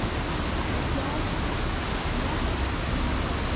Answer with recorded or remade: recorded